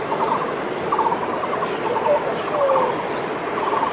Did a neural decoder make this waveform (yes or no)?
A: no